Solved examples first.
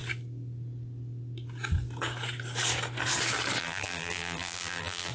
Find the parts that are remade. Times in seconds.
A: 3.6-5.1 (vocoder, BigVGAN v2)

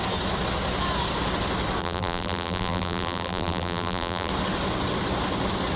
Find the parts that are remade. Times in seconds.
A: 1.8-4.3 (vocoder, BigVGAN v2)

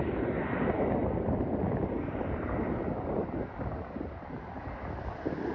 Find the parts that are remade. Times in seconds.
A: 1.0-4.3 (vocoder, BigVGAN v2)

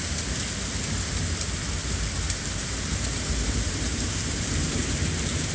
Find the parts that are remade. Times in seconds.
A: 1.8-5.1 (vocoder, BigVGAN v2)

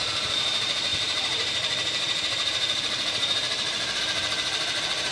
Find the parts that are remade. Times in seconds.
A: 0.0-5.1 (vocoder, BigVGAN v2)

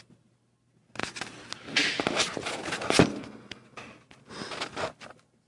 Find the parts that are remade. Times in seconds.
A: none

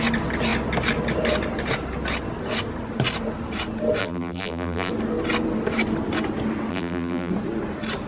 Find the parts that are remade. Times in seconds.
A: 4.0-4.9 (vocoder, BigVGAN v2); 6.7-7.3

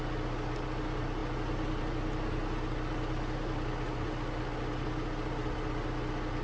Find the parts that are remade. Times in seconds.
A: none